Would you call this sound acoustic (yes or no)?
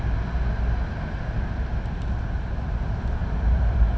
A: yes